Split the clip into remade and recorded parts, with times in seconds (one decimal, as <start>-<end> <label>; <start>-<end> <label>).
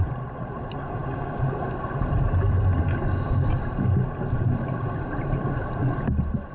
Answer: 0.0-6.5 recorded